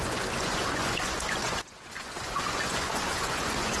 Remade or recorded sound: remade